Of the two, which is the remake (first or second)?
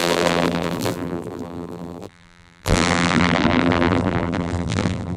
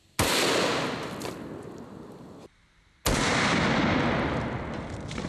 first